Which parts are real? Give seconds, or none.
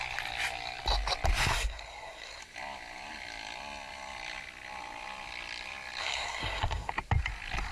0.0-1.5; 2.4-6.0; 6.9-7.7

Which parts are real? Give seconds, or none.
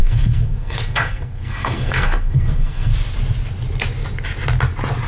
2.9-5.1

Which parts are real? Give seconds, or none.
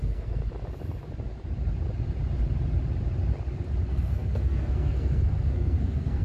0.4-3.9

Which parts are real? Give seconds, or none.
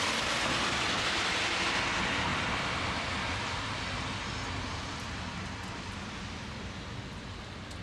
0.0-7.8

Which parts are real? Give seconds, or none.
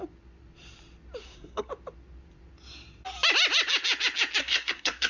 0.0-1.2; 1.7-4.4